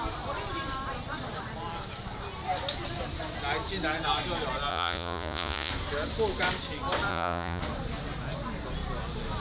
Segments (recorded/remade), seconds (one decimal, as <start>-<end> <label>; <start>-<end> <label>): 0.0-4.7 recorded; 4.7-5.7 remade; 5.7-7.1 recorded; 7.1-7.6 remade; 7.6-9.4 recorded